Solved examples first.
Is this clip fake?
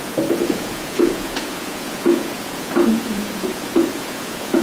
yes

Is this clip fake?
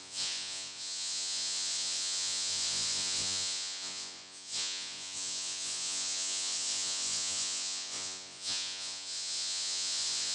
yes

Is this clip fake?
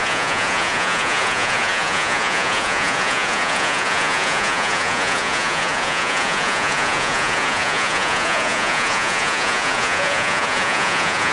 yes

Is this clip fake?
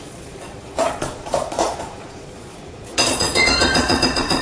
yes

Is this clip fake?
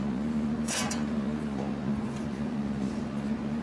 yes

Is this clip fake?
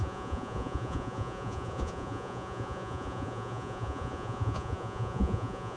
yes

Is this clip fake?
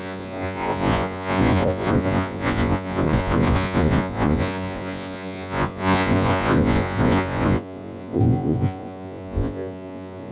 yes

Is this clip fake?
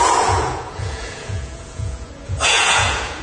yes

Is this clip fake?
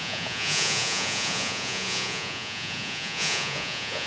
yes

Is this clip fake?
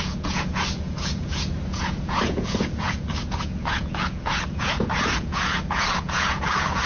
yes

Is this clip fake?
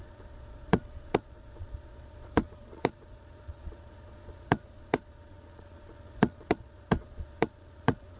yes